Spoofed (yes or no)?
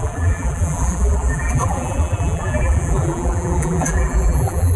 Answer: yes